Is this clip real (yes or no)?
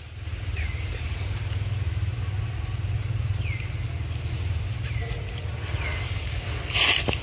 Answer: yes